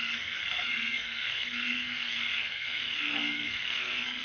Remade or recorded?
remade